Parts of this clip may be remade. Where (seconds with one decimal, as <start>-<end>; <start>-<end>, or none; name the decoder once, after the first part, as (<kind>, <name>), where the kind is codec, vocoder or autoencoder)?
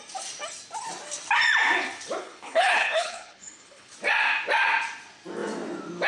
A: 2.2-3.9 (codec, HILCodec)